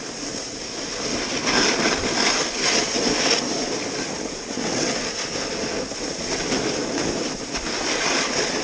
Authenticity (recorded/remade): recorded